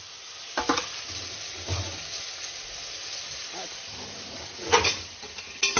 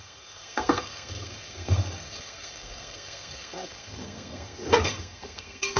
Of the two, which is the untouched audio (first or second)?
first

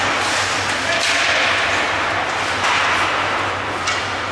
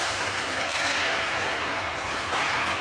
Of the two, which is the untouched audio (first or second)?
first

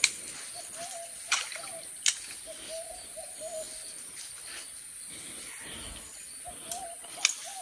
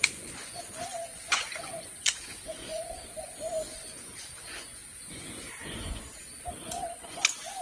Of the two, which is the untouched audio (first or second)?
first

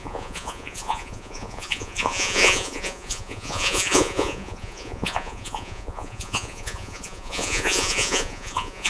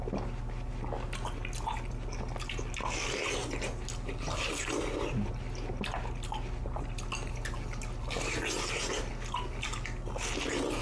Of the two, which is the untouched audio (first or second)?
second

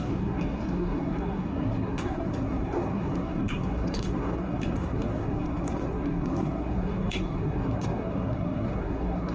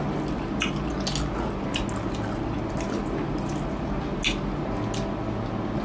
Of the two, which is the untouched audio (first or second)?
second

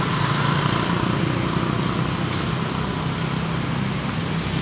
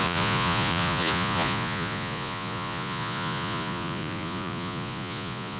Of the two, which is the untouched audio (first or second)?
first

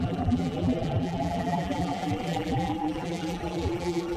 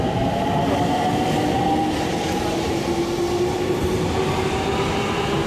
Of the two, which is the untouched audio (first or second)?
second